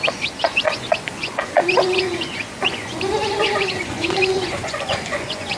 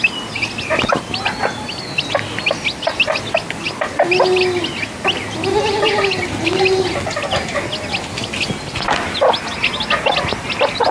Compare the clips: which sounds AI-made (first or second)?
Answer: first